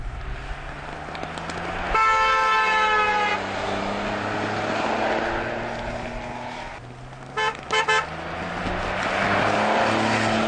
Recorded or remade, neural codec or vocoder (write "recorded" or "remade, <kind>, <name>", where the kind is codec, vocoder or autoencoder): recorded